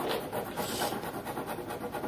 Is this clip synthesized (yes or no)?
no